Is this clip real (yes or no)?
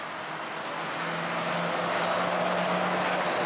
yes